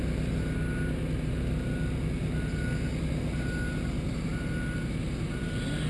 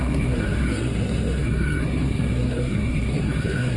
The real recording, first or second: first